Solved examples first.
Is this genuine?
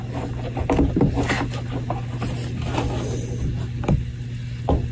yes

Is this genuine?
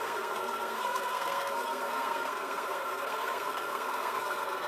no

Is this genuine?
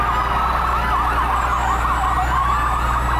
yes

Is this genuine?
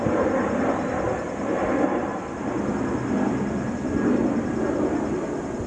yes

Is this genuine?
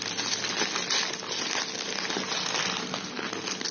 yes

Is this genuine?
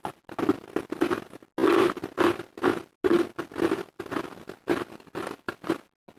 yes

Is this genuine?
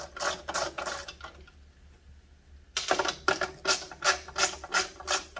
yes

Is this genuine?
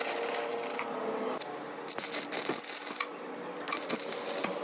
yes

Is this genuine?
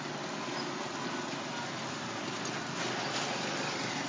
yes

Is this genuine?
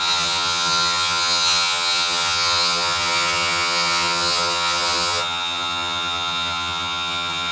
no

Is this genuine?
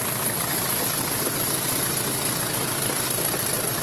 yes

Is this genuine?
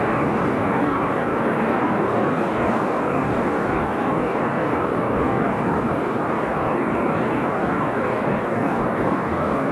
no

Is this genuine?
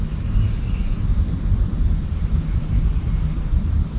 yes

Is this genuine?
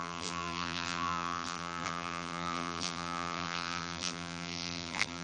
no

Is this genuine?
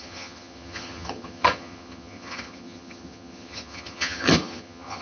no